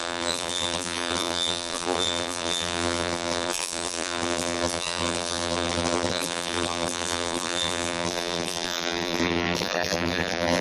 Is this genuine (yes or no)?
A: no